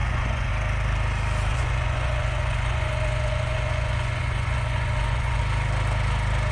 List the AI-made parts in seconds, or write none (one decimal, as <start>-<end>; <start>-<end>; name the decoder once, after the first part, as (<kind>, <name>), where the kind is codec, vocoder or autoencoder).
0.0-0.5 (vocoder, Vocos); 1.5-5.4